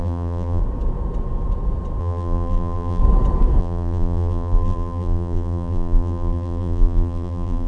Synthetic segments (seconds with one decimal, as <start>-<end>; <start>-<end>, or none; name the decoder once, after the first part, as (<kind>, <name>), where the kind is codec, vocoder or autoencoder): 0.0-0.6 (vocoder, BigVGAN v2); 2.0-3.0; 3.6-7.7

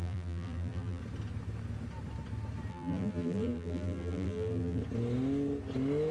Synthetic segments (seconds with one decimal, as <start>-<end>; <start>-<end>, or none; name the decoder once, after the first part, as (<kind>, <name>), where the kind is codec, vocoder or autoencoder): 0.0-1.0 (vocoder, BigVGAN v2); 2.7-4.8

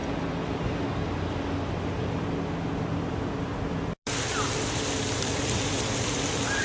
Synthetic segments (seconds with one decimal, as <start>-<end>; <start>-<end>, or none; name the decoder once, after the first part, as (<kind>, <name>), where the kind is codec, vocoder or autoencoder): none

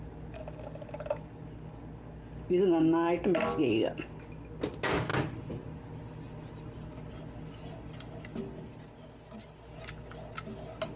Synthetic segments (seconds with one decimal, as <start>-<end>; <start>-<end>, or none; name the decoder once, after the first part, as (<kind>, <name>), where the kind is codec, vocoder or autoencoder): none

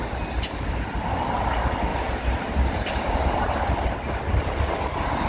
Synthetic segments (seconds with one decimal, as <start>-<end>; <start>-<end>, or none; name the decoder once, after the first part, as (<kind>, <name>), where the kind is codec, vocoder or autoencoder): 1.9-3.7 (vocoder, BigVGAN v2)

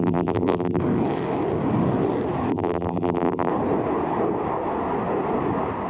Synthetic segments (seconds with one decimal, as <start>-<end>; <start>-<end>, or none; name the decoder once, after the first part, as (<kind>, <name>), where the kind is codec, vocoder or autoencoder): 0.0-0.8 (vocoder, BigVGAN v2); 2.5-3.5

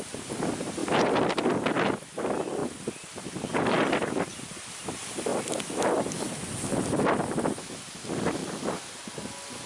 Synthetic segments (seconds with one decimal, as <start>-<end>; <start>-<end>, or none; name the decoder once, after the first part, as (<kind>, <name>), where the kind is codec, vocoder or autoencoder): 0.8-1.5 (vocoder, BigVGAN v2); 2.6-4.7

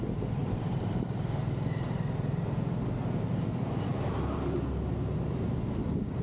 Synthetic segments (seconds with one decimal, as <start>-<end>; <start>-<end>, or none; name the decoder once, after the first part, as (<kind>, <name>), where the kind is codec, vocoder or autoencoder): 0.4-1.4 (vocoder, BigVGAN v2)